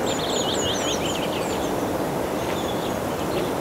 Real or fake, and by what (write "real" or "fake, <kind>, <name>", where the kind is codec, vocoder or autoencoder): real